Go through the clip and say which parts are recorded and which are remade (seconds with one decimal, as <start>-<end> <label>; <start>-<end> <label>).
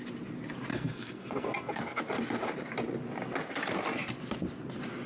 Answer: 0.0-0.7 recorded; 0.7-2.0 remade; 2.0-5.1 recorded